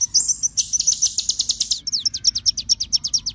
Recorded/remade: recorded